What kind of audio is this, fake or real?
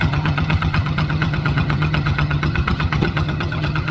fake